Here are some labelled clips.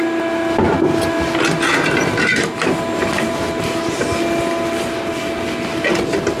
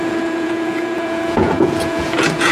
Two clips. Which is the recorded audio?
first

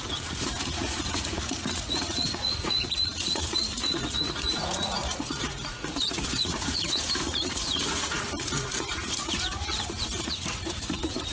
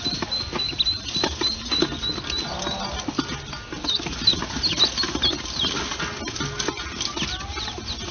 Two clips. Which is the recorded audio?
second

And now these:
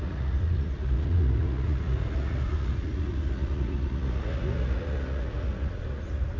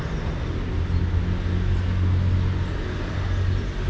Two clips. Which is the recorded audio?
second